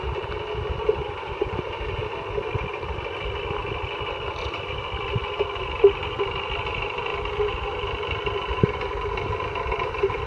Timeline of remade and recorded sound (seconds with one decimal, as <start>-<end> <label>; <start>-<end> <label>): 0.0-10.3 recorded